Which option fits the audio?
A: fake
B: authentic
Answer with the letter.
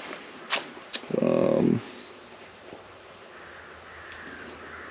B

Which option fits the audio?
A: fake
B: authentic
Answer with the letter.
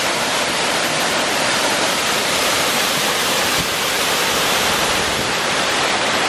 A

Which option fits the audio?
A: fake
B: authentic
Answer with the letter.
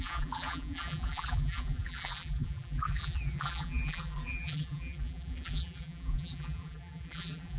A